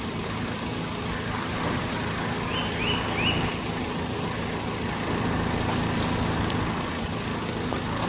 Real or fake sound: real